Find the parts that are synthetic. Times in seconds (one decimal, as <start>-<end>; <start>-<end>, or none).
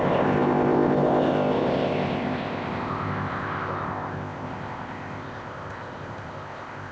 0.0-6.9